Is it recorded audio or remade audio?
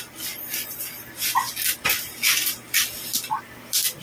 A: recorded